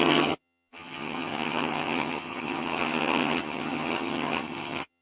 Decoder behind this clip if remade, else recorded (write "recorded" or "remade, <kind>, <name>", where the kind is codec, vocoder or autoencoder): remade, vocoder, HiFi-GAN